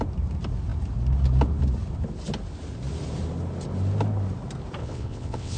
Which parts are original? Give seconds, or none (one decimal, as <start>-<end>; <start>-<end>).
0.0-4.8